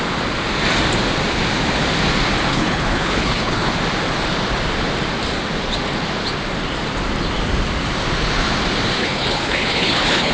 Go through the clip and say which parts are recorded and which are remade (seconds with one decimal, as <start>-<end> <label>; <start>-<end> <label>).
0.0-2.5 recorded; 2.5-3.7 remade; 3.7-9.0 recorded; 9.0-10.3 remade